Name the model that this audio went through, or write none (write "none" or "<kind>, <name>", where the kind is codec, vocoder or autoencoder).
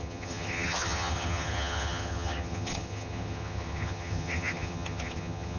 vocoder, HiFi-GAN